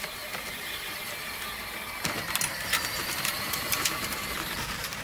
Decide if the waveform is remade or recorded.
remade